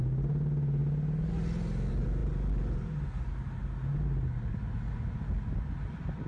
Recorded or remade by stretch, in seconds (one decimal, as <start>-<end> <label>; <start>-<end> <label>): 0.0-6.3 recorded